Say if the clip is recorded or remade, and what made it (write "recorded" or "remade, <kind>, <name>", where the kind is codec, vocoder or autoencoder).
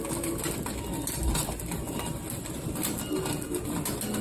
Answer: recorded